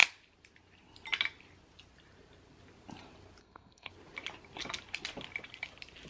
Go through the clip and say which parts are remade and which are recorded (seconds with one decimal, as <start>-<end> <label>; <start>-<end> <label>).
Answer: 0.0-3.4 recorded; 3.4-3.9 remade; 3.9-6.1 recorded